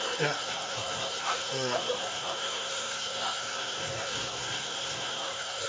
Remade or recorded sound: remade